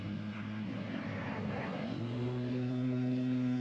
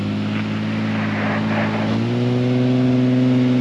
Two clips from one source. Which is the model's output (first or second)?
first